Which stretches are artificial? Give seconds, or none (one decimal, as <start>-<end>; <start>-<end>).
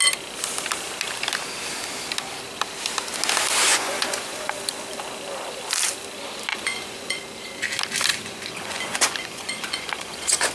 3.7-4.5; 6.5-7.2; 8.1-10.5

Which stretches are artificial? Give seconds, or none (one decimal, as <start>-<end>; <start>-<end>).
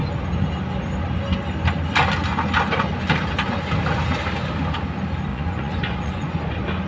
5.3-6.4